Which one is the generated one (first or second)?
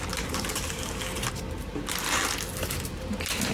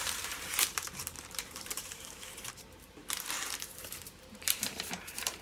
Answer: second